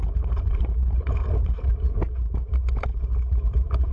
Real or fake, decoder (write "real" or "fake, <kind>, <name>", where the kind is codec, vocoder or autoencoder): fake, vocoder, BigVGAN v2